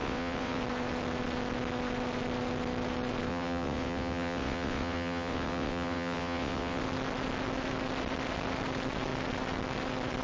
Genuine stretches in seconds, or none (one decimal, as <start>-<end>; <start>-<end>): 0.6-3.3; 6.8-10.2